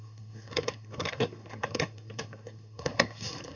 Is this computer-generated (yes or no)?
yes